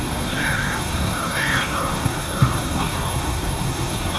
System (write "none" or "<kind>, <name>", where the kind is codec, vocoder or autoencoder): codec, SNAC